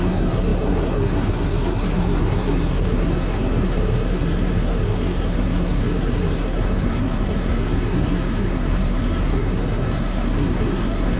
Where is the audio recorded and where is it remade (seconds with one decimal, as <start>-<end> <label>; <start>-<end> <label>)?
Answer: 0.0-11.2 remade